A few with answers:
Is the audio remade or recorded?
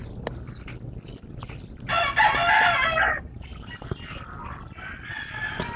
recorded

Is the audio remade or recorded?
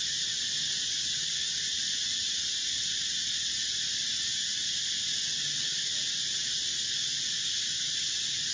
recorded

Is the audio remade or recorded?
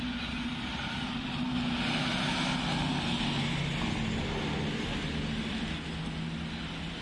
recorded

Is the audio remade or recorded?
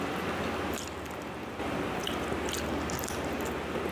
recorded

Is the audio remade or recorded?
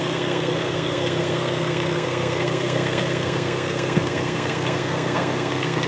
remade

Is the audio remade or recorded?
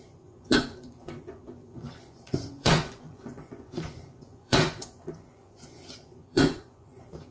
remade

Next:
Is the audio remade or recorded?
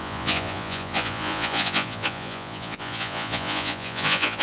remade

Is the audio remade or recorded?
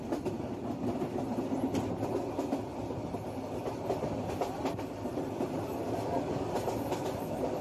recorded